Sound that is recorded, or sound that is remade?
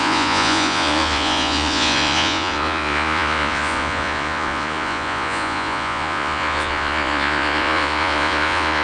remade